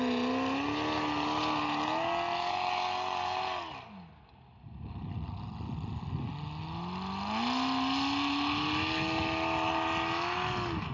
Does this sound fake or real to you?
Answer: real